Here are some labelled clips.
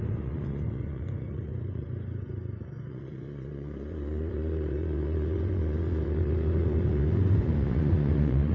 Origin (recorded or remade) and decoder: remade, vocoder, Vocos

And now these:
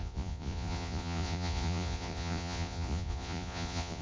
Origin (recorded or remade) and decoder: remade, vocoder, Vocos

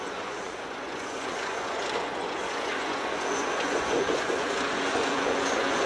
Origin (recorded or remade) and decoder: remade, vocoder, Vocos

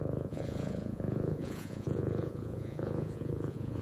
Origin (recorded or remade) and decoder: remade, vocoder, Vocos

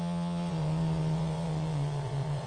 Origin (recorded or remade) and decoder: remade, vocoder, Vocos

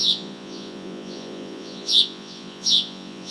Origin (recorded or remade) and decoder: remade, vocoder, Vocos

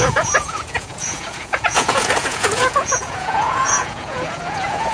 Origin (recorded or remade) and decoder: remade, vocoder, Vocos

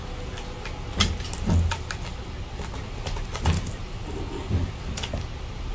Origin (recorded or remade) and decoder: recorded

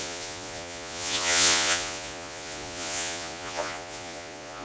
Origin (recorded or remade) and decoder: remade, vocoder, Vocos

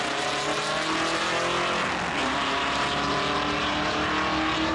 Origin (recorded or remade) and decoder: recorded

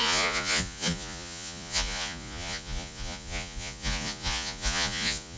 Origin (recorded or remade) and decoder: remade, vocoder, Vocos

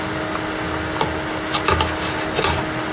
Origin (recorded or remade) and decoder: recorded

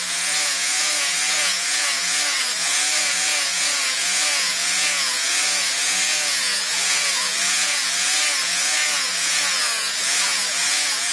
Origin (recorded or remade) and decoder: remade, vocoder, Vocos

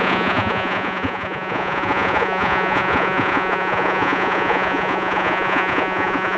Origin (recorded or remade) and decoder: remade, vocoder, Vocos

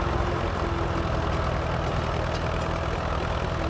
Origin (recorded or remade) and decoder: recorded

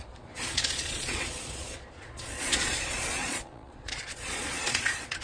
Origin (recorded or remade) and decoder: remade, vocoder, Vocos